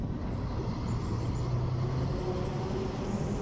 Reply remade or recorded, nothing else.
recorded